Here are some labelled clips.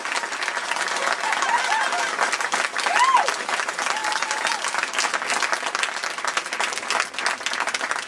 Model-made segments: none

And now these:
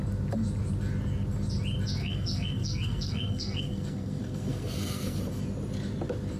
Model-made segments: 2.0-5.2 (codec, SNAC)

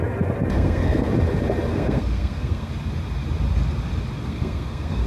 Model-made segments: 0.5-1.1 (codec, SNAC); 1.7-2.7; 4.2-5.1

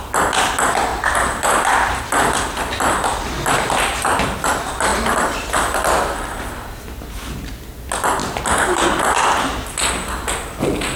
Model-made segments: 0.9-2.0 (vocoder, BigVGAN v2)

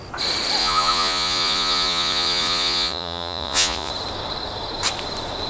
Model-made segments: 0.6-3.9 (vocoder, Vocos)

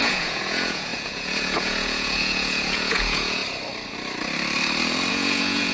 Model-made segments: 0.0-3.4 (vocoder, Vocos); 5.1-5.7

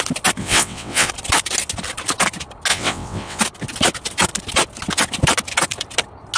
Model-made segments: 0.4-1.1 (vocoder, WaveNeXt); 2.7-3.4